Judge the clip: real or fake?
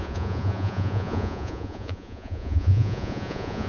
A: fake